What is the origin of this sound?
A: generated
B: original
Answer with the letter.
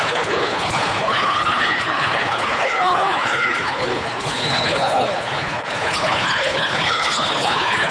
A